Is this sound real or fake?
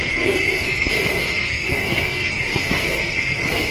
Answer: fake